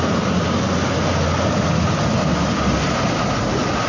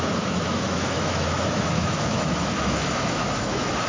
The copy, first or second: second